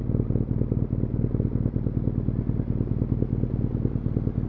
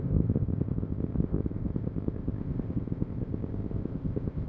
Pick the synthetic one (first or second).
second